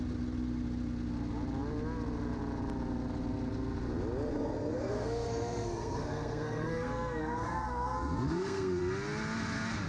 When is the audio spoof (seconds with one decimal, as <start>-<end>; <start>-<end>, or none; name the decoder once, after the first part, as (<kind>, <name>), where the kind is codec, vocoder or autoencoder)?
4.3-8.8 (codec, SNAC)